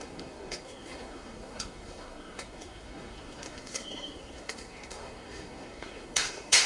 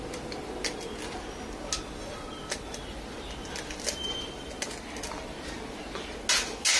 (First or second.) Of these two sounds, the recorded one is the second